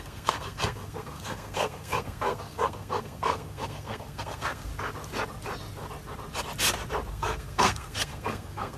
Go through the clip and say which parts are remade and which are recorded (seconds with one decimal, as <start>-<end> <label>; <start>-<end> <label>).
0.0-4.7 remade; 4.7-7.1 recorded; 7.1-8.8 remade